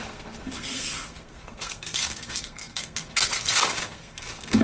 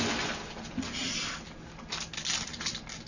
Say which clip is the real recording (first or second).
second